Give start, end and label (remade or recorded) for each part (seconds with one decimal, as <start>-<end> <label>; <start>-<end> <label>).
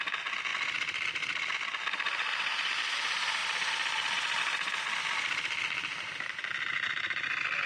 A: 0.0-7.7 recorded